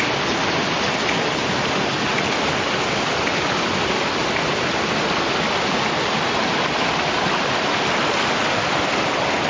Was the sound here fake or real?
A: real